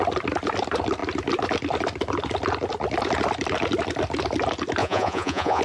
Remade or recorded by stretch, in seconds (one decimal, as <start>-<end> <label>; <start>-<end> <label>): 0.0-4.8 recorded; 4.8-5.6 remade